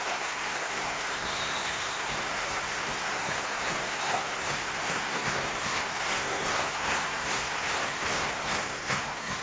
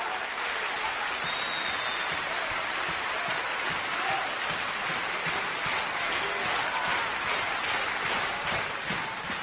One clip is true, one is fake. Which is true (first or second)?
second